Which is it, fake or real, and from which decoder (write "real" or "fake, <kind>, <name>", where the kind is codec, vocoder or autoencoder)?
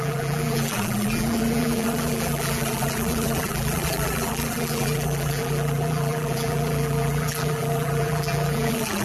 fake, vocoder, BigVGAN v2